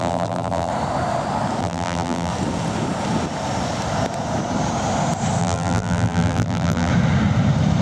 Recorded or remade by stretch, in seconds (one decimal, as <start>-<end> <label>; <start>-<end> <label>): 0.0-0.7 remade; 0.7-1.6 recorded; 1.6-2.3 remade; 2.3-5.4 recorded; 5.4-6.9 remade; 6.9-7.8 recorded